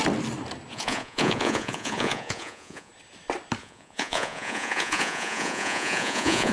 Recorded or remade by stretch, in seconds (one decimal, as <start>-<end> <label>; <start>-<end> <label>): 0.0-0.7 recorded; 0.7-2.9 remade; 2.9-3.6 recorded; 3.6-6.5 remade